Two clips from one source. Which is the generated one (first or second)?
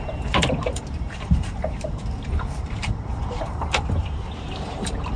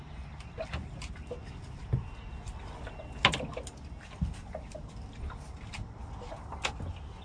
first